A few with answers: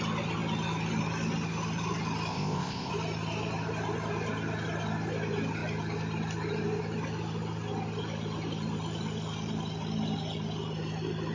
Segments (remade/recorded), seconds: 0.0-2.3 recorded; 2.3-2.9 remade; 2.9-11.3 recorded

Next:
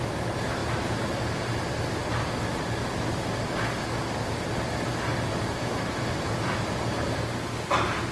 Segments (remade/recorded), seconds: 0.0-8.1 recorded

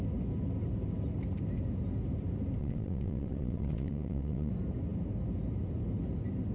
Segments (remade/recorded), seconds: 0.0-2.6 recorded; 2.6-4.5 remade; 4.5-6.5 recorded